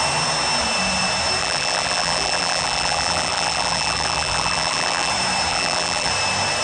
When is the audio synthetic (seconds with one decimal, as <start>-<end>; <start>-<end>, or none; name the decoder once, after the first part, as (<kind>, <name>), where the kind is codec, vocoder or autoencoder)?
1.4-5.1 (vocoder, BigVGAN v2); 5.5-6.1